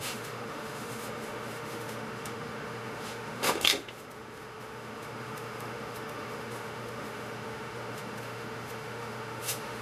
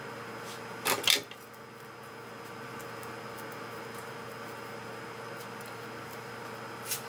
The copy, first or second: first